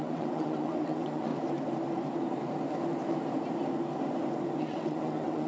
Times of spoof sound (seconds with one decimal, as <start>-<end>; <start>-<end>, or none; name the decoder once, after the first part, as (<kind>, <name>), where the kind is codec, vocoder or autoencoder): 0.0-1.3 (vocoder, WaveNeXt); 4.6-5.5